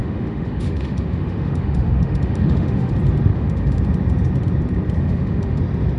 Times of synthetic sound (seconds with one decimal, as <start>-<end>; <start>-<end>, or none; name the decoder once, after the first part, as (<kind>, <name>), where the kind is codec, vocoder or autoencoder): 0.0-2.9 (autoencoder, DAC-VAE); 3.3-3.8; 5.0-5.6